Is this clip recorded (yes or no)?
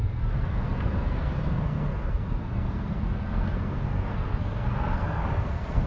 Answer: no